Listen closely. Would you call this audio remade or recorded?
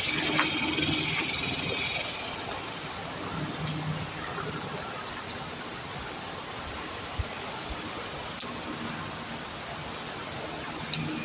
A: recorded